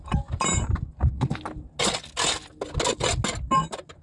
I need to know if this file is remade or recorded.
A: recorded